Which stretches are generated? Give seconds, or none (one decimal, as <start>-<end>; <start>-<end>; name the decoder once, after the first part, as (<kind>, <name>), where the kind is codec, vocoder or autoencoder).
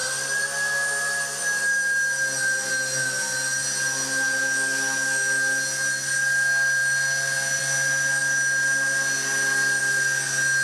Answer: none